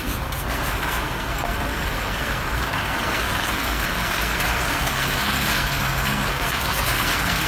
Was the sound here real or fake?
fake